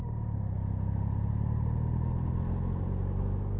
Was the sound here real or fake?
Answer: real